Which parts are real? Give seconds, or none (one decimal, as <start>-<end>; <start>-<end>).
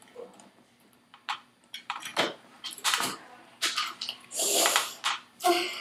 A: none